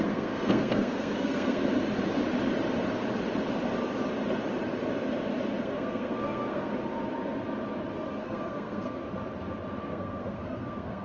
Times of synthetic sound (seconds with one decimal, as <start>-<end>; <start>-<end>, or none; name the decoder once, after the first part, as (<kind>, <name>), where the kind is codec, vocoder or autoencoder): 0.0-1.6 (codec, SNAC); 5.6-6.7; 8.2-9.0; 9.8-11.0